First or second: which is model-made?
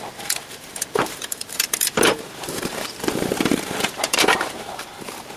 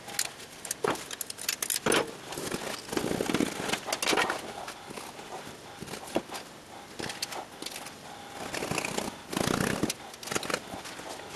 first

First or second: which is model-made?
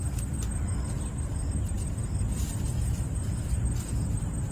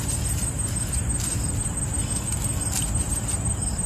first